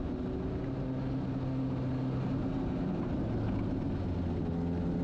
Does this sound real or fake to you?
real